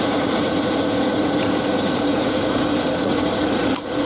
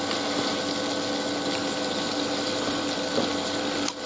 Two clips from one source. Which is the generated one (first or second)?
first